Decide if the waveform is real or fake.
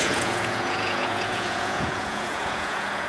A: fake